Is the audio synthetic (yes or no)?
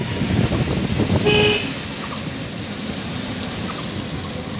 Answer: no